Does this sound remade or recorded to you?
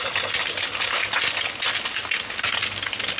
recorded